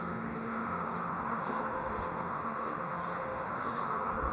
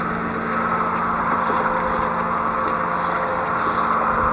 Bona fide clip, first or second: second